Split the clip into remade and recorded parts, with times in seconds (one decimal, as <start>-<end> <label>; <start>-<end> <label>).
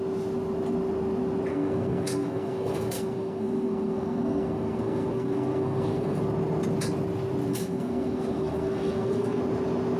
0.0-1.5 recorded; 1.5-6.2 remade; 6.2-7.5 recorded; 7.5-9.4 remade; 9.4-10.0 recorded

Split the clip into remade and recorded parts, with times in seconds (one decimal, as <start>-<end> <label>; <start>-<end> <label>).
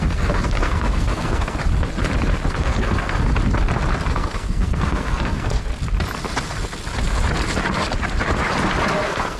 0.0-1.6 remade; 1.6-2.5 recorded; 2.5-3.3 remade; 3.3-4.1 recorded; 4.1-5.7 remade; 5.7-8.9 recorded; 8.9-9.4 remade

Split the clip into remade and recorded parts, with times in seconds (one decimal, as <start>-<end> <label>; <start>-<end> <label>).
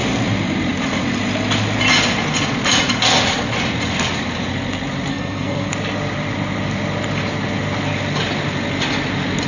0.0-5.1 recorded; 5.1-5.7 remade; 5.7-9.5 recorded